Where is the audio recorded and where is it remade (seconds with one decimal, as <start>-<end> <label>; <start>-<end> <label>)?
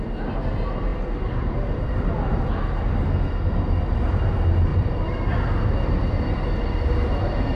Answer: 0.0-0.9 recorded; 0.9-2.4 remade; 2.4-4.7 recorded; 4.7-5.8 remade; 5.8-7.6 recorded